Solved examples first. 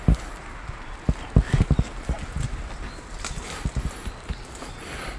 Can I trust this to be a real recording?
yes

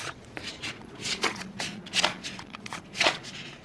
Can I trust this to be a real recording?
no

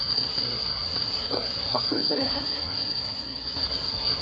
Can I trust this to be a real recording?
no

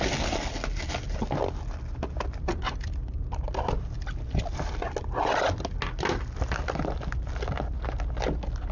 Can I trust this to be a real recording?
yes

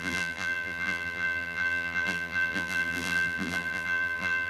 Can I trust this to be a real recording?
no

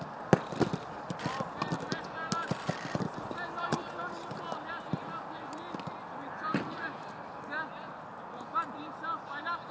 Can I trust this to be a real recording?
yes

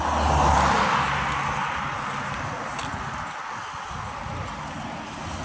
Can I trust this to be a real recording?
yes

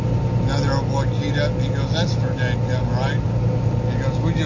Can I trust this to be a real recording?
yes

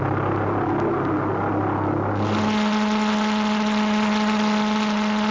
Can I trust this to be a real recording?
yes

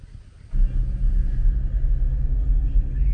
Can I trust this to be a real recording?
yes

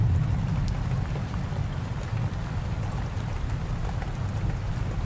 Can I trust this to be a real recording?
yes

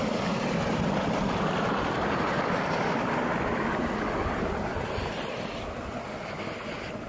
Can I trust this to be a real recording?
yes